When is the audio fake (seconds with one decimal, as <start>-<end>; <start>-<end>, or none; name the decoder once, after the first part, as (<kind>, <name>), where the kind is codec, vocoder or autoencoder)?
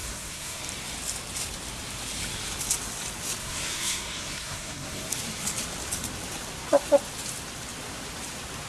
0.0-0.6 (codec, SNAC); 3.4-5.1